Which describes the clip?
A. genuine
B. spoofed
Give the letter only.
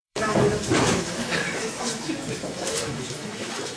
B